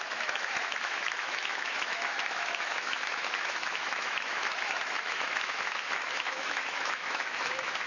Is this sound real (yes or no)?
no